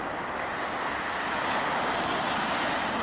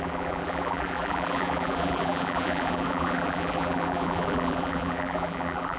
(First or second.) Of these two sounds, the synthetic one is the second